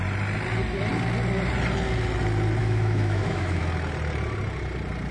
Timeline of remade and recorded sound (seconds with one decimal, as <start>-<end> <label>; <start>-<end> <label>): 0.0-2.6 recorded; 2.6-3.6 remade; 3.6-5.1 recorded